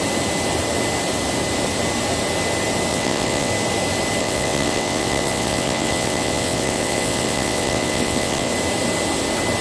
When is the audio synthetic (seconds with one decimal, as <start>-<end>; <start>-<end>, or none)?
2.9-3.5; 4.2-8.5